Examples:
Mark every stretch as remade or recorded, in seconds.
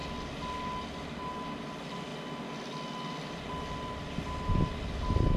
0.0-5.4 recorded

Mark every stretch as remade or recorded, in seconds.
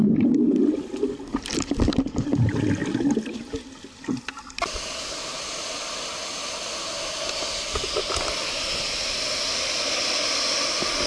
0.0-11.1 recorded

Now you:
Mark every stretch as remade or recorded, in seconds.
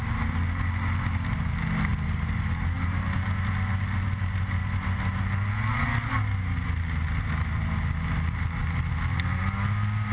0.0-10.1 recorded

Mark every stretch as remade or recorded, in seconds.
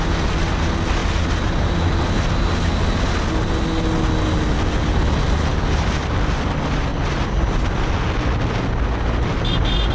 0.0-1.0 recorded; 1.0-2.0 remade; 2.0-9.9 recorded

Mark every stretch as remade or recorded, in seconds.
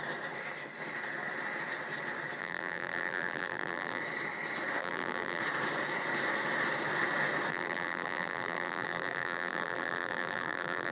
0.0-2.4 recorded; 2.4-4.0 remade; 4.0-4.8 recorded; 4.8-5.4 remade; 5.4-7.5 recorded; 7.5-10.9 remade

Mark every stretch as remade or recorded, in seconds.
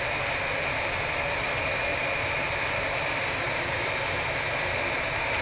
0.0-1.9 recorded; 1.9-5.4 remade